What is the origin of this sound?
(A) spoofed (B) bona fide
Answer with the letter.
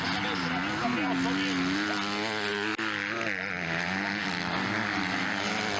B